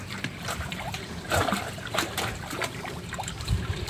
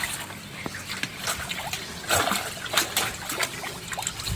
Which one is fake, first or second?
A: first